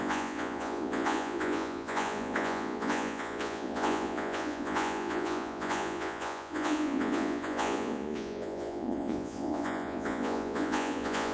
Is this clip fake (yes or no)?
yes